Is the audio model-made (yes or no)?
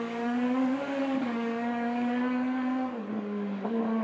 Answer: yes